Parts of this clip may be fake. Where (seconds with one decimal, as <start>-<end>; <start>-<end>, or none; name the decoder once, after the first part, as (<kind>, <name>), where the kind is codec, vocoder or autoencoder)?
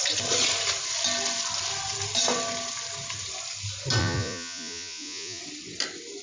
4.0-5.4 (vocoder, Vocos)